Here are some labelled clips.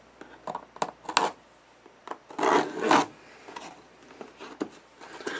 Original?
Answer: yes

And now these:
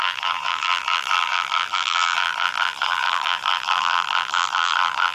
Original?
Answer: no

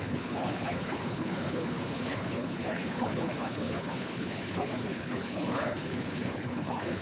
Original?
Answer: no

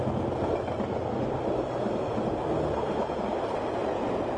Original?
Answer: yes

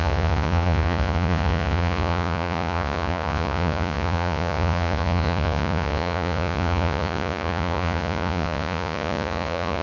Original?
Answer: no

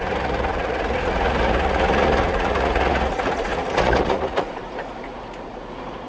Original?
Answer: no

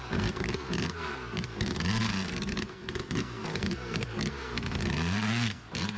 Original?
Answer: no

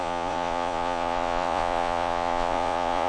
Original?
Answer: no